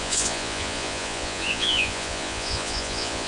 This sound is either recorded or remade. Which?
remade